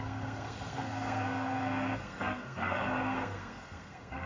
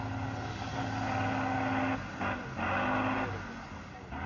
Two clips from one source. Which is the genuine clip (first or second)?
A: second